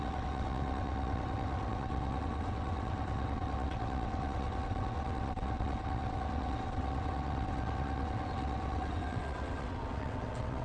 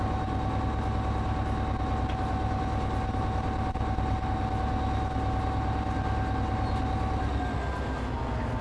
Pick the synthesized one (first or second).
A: first